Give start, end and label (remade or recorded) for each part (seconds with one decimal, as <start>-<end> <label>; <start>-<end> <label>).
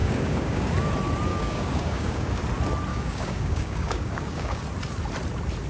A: 0.0-0.7 remade; 0.7-1.3 recorded; 1.3-2.4 remade; 2.4-2.9 recorded; 2.9-4.6 remade; 4.6-5.7 recorded